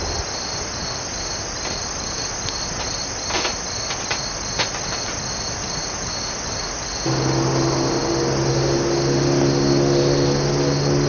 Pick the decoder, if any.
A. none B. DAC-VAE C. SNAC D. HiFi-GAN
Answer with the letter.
A